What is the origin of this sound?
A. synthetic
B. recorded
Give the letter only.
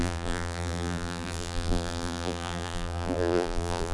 A